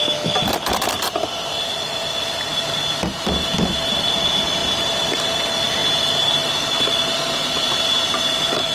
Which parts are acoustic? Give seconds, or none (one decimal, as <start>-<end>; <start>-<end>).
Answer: 0.0-8.7